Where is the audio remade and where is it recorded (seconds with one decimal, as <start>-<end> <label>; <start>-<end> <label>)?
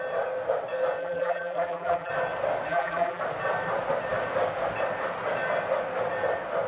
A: 0.0-1.0 recorded; 1.0-2.1 remade; 2.1-2.7 recorded; 2.7-3.2 remade; 3.2-6.7 recorded